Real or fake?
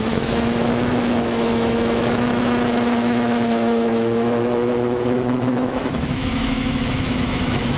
fake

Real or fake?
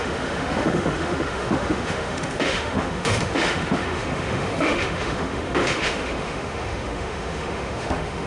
fake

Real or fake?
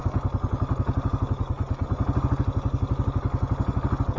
real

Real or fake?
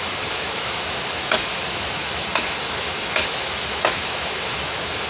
fake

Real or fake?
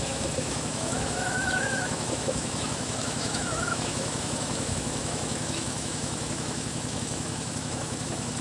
fake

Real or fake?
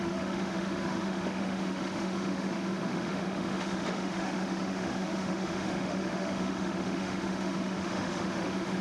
fake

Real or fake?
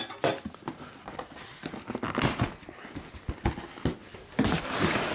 real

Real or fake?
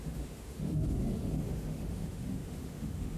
fake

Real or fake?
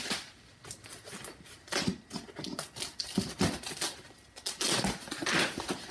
real